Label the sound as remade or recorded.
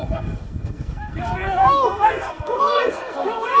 remade